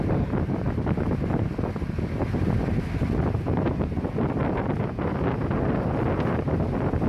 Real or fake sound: real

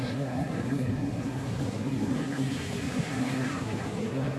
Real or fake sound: fake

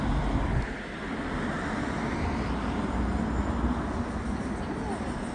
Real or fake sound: real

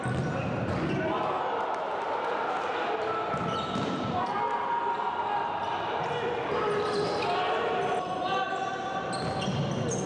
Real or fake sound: real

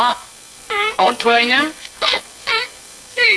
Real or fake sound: fake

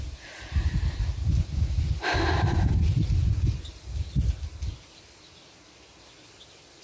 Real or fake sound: real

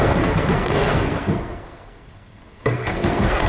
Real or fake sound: fake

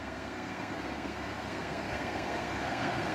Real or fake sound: fake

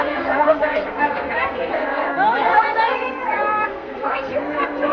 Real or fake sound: fake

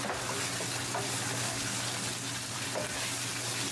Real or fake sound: real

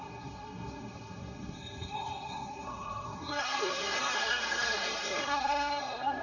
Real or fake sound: fake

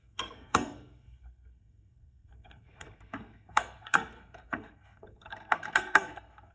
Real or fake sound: fake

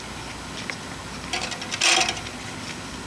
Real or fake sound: real